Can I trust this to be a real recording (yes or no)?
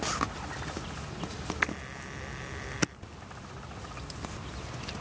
yes